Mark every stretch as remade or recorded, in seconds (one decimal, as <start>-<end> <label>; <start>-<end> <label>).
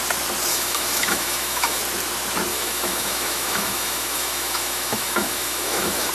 0.0-0.5 recorded; 0.5-1.8 remade; 1.8-2.5 recorded; 2.5-6.1 remade